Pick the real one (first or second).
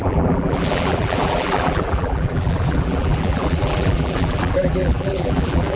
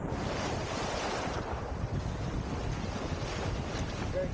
second